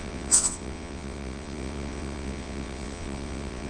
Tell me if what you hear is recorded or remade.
remade